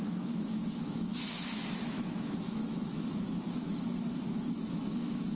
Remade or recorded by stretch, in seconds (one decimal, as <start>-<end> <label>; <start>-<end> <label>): 0.0-5.4 remade